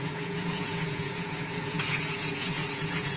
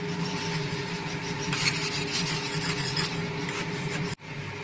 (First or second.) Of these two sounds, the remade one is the first